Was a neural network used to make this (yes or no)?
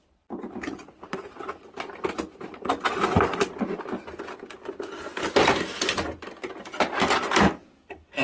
no